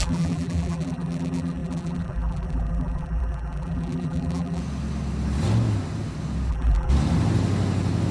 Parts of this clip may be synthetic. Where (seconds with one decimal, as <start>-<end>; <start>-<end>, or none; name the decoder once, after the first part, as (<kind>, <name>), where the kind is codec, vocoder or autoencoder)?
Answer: 0.0-4.6 (vocoder, BigVGAN v2); 6.5-6.9